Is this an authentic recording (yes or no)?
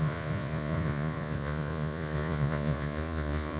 no